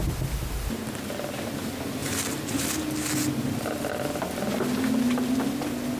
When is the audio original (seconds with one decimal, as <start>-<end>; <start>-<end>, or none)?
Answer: 0.0-6.0